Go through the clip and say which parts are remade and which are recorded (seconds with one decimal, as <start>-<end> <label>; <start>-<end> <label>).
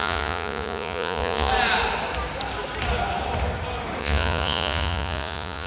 0.0-1.5 remade; 1.5-4.0 recorded; 4.0-5.7 remade